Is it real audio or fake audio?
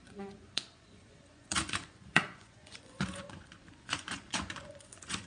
fake